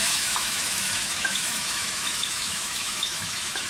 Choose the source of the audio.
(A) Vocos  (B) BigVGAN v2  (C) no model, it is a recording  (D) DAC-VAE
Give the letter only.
D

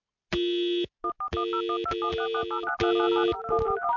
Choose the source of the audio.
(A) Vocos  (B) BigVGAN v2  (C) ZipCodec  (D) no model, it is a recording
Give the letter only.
D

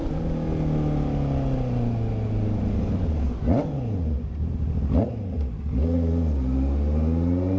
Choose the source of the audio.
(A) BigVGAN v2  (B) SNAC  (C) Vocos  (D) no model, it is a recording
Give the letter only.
D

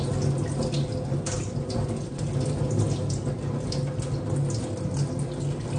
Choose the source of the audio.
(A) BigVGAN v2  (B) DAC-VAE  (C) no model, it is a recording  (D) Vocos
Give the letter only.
C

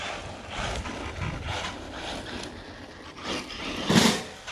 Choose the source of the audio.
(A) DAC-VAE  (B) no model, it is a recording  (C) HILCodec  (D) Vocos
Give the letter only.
B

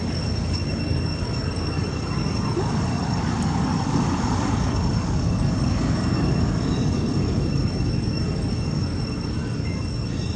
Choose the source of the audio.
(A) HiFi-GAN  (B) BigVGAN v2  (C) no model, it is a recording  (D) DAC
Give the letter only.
D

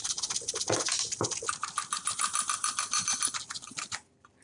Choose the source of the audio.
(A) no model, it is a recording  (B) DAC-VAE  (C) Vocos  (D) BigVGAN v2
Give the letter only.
D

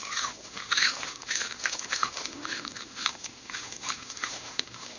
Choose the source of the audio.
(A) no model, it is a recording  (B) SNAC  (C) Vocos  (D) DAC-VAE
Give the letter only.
D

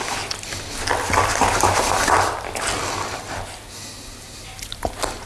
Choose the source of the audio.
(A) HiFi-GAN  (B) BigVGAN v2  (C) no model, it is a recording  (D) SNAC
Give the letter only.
C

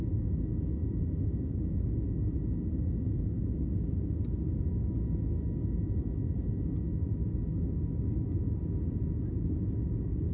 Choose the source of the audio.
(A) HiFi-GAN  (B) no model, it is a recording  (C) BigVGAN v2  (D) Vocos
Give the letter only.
B